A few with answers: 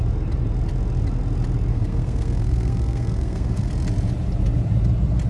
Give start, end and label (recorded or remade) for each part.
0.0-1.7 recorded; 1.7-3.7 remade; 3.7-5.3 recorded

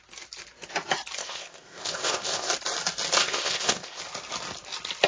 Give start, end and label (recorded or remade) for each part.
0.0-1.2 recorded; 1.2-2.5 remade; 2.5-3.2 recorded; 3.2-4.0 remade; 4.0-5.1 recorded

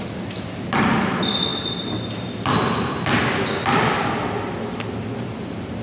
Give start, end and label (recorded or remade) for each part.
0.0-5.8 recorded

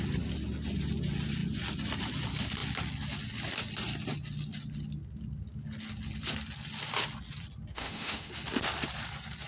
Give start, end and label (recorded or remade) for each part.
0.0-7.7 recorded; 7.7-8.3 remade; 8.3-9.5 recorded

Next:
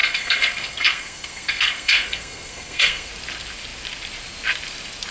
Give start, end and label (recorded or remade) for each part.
0.0-3.1 remade; 3.1-5.1 recorded

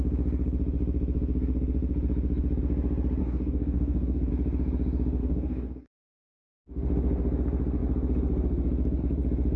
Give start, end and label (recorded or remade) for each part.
0.0-3.2 recorded; 3.2-4.3 remade; 4.3-5.2 recorded; 5.2-6.5 remade; 6.5-9.6 recorded

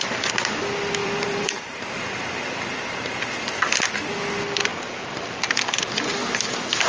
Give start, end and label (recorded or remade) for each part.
0.0-1.0 recorded; 1.0-3.5 remade; 3.5-6.9 recorded